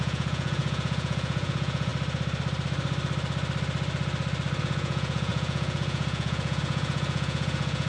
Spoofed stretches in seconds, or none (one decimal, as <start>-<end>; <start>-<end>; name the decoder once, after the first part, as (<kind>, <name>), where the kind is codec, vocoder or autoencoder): 0.0-1.9 (vocoder, Vocos); 4.6-7.9